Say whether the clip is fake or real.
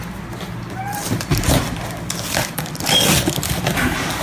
real